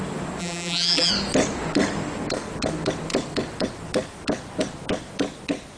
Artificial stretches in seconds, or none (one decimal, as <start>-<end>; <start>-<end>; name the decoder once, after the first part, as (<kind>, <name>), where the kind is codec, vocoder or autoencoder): 0.4-1.1 (vocoder, BigVGAN v2)